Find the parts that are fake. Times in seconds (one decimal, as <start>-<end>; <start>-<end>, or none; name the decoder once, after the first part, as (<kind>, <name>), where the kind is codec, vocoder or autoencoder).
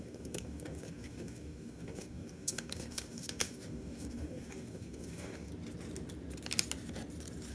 0.0-5.5 (codec, DAC)